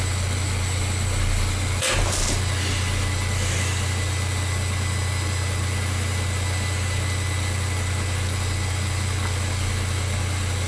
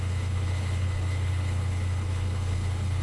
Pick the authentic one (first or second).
first